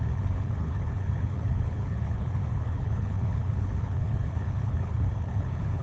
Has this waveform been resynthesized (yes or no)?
yes